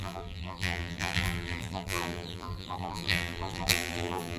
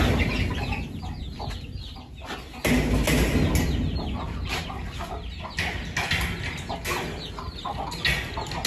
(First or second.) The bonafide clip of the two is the second